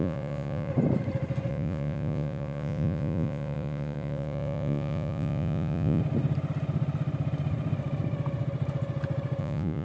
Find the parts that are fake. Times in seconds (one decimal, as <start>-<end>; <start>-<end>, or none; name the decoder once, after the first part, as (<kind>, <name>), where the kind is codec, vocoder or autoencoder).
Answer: 0.0-0.7 (vocoder, Vocos); 1.5-6.0; 9.4-9.8

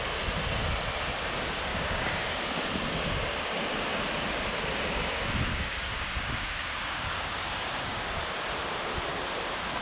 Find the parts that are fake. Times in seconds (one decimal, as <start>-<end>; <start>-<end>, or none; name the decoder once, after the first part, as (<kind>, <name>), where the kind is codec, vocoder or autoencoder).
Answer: 1.7-2.6 (codec, DAC); 5.5-8.2

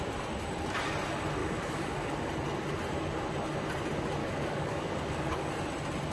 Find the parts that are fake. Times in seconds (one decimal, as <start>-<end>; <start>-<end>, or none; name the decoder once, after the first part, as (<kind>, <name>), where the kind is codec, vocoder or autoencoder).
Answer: 1.4-2.3 (codec, DAC); 4.2-5.5

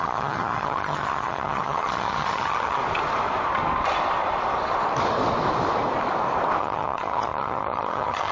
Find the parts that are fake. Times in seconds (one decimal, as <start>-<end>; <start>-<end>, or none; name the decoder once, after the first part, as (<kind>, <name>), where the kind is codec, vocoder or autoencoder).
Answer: 0.0-2.8 (vocoder, HiFi-GAN); 6.6-8.3

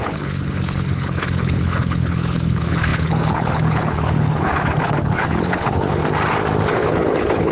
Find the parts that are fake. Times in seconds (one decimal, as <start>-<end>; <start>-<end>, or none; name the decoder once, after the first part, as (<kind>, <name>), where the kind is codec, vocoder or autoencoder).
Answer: 0.0-6.0 (codec, HILCodec); 6.7-7.5